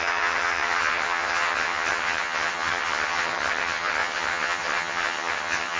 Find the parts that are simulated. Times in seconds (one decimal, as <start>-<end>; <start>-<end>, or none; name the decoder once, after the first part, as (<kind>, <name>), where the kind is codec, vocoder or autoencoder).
0.0-5.8 (vocoder, HiFi-GAN)